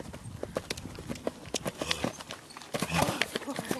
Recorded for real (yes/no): yes